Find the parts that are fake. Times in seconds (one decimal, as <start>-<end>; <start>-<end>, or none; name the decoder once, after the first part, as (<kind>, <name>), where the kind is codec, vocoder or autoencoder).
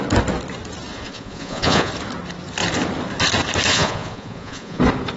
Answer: 0.9-1.9 (vocoder, Vocos); 3.7-4.8